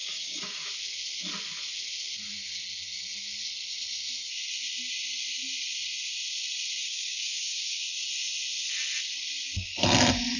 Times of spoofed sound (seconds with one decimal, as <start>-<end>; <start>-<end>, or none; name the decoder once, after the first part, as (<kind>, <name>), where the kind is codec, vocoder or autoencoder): 0.0-0.7 (codec, DAC); 6.8-7.8